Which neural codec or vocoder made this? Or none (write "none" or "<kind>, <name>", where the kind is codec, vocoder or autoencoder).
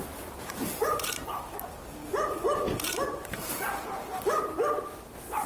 vocoder, BigVGAN v2